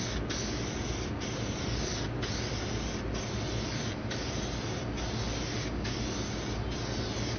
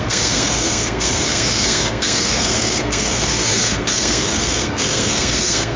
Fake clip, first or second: second